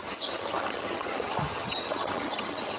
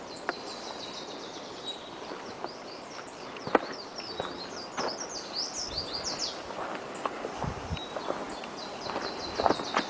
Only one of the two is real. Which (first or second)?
second